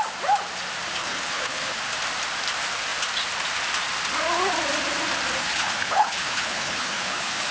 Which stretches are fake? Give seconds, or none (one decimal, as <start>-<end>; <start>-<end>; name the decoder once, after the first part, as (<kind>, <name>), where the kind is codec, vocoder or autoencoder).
1.0-1.8 (codec, HILCodec); 5.4-7.5